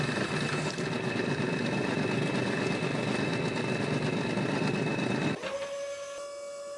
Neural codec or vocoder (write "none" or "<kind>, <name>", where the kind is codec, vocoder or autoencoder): none